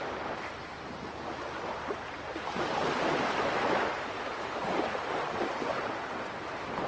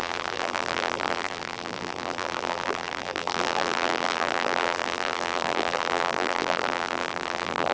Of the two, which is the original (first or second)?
first